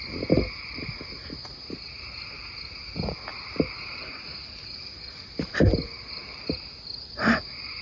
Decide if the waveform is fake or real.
real